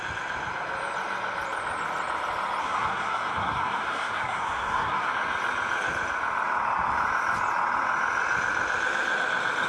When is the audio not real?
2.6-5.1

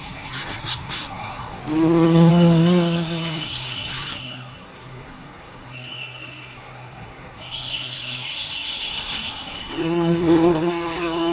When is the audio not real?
0.0-1.6; 2.3-11.3

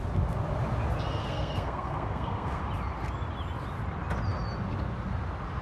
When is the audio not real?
1.2-2.6

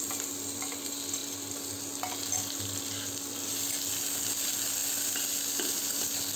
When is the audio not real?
none